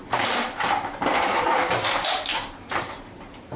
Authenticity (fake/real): fake